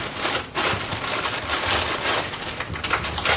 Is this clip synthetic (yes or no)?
no